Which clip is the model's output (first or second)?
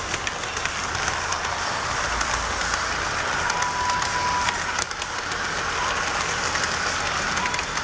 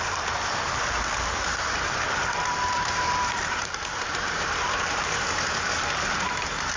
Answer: second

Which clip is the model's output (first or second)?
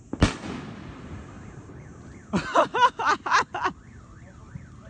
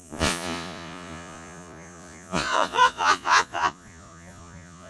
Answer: second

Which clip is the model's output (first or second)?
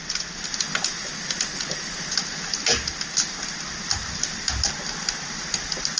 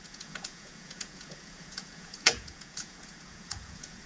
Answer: second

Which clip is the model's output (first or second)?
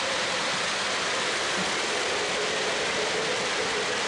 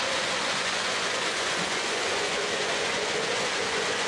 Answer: second